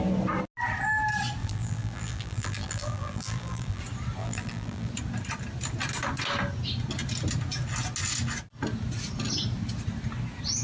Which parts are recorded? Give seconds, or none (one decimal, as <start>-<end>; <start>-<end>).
0.0-1.4; 3.8-4.2; 4.9-10.6